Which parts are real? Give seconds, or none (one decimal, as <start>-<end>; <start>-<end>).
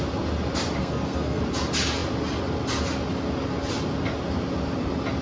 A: 0.0-0.8; 1.4-5.2